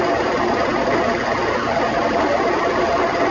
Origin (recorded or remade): recorded